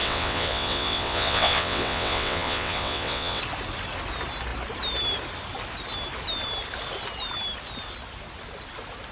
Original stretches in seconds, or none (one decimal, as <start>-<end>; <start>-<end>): 3.4-9.1